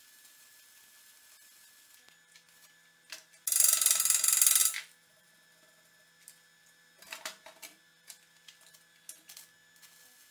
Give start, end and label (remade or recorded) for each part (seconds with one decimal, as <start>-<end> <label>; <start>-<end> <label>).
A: 0.0-4.6 recorded; 4.6-5.3 remade; 5.3-10.3 recorded